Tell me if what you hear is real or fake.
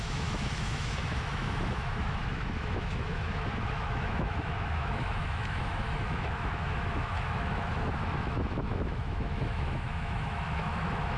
fake